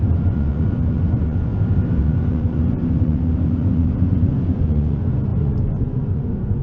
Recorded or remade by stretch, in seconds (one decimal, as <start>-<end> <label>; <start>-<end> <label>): 0.0-1.5 remade; 1.5-2.0 recorded; 2.0-6.6 remade